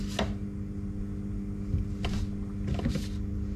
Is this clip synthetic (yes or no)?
no